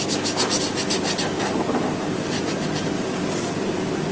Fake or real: real